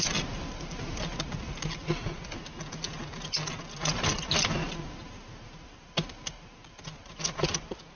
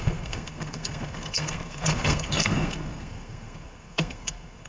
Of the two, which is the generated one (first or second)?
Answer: second